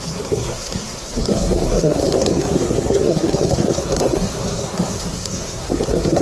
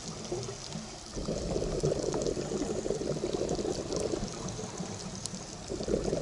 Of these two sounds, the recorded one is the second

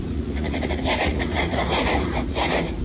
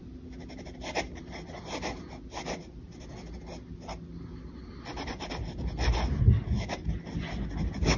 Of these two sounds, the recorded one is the second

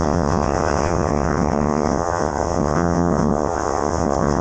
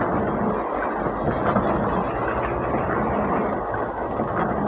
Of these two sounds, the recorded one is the second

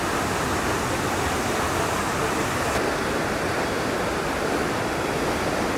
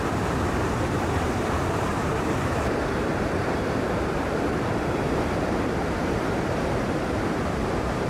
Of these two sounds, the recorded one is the first